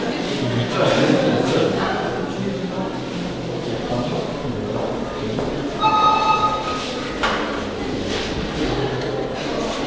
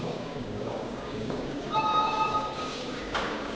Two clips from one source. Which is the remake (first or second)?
second